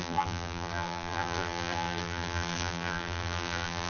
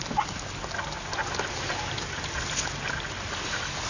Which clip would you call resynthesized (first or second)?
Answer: first